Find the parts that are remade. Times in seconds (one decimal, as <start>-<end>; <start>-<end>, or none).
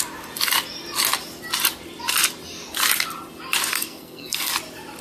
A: 3.7-4.5